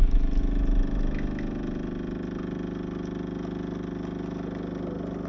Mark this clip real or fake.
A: real